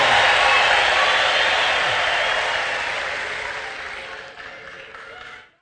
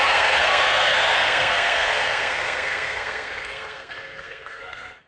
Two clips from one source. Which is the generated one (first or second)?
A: second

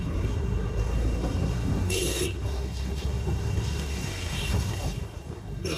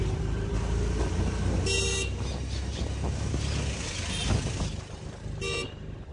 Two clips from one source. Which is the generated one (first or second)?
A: first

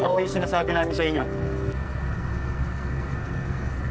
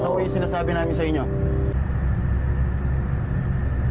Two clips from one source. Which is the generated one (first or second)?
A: first